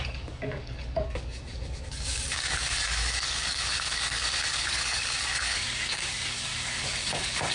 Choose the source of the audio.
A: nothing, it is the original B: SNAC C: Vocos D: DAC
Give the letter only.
D